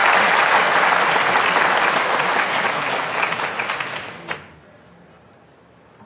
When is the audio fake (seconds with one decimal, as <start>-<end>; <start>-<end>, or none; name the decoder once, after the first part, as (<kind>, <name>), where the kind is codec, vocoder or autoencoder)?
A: none